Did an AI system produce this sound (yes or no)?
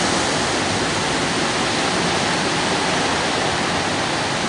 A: no